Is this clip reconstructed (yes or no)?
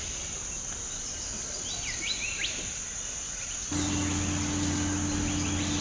no